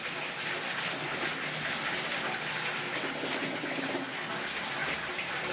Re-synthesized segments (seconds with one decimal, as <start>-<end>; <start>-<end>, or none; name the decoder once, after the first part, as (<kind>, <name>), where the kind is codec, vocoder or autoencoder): none